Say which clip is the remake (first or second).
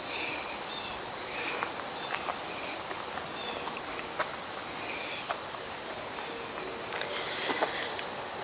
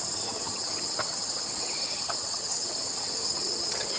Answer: second